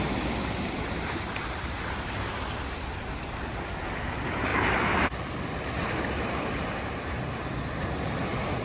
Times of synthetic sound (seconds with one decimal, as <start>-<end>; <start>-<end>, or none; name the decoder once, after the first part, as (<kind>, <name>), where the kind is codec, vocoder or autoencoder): 5.8-7.2 (vocoder, BigVGAN v2)